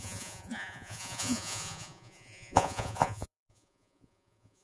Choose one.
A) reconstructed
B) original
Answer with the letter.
A